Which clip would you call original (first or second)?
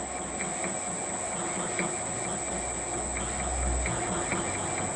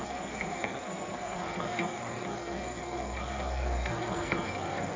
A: first